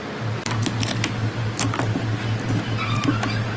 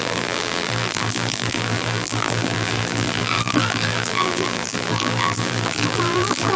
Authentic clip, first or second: first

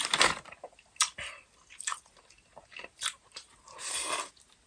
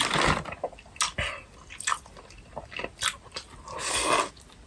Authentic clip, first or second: second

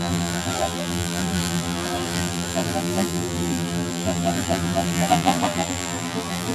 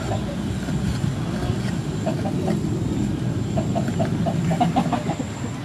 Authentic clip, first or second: second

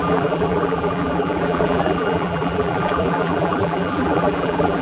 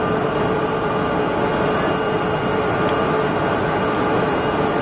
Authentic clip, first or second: second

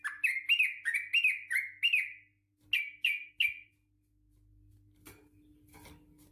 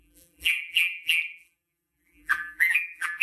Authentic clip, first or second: first